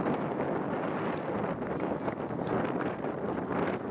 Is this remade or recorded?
recorded